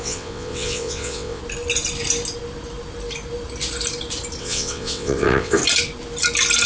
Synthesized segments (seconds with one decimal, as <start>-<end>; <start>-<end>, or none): 0.0-1.4; 4.4-5.6